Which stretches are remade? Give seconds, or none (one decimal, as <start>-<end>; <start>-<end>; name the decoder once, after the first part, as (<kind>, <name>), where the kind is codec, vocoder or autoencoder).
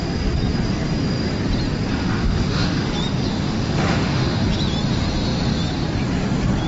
2.2-2.9 (autoencoder, DAC-VAE); 3.3-4.4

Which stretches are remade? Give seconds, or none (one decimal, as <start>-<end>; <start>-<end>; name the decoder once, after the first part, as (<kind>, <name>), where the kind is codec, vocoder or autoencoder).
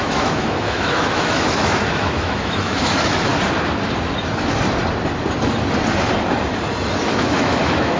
0.0-3.3 (autoencoder, DAC-VAE); 7.0-8.0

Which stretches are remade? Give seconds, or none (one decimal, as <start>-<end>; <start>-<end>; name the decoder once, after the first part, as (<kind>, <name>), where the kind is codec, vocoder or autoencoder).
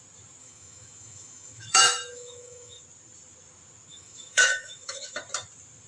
0.4-2.8 (autoencoder, DAC-VAE); 3.9-5.2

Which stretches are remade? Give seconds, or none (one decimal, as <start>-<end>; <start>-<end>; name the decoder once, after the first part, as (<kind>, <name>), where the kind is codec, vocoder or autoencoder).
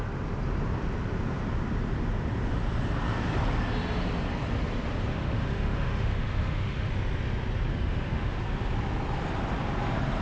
5.1-6.9 (autoencoder, DAC-VAE); 7.7-8.4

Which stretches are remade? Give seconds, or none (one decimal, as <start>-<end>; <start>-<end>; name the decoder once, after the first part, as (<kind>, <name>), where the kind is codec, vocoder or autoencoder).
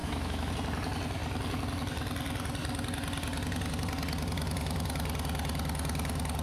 0.0-0.5 (autoencoder, DAC-VAE)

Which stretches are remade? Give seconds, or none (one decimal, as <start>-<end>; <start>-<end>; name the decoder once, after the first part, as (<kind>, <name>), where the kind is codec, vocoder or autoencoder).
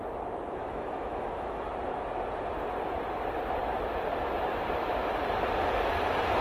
0.6-1.7 (autoencoder, DAC-VAE)